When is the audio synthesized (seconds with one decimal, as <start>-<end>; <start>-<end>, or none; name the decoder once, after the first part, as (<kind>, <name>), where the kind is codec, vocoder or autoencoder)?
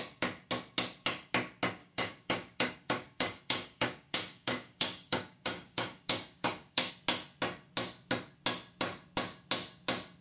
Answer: 1.8-6.9 (codec, DAC)